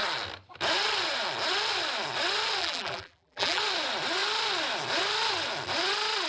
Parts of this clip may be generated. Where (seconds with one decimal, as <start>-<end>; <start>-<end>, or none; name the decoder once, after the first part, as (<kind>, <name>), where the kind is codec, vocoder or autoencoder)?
2.6-3.6 (vocoder, BigVGAN v2)